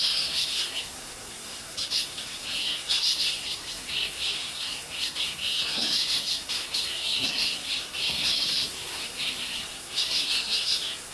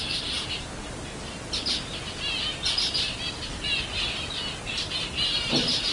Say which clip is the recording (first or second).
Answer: second